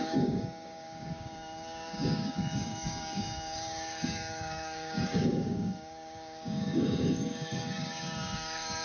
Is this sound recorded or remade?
remade